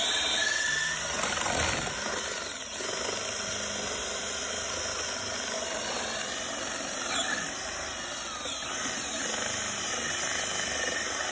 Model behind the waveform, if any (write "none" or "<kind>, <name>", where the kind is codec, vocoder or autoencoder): none